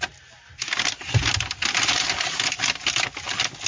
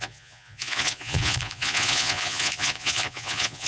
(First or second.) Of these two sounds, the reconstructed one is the second